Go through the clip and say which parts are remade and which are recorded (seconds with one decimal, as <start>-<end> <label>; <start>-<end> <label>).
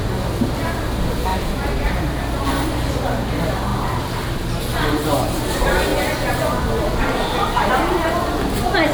0.0-1.3 recorded; 1.3-2.9 remade; 2.9-3.7 recorded; 3.7-4.7 remade; 4.7-5.9 recorded; 5.9-7.7 remade; 7.7-8.9 recorded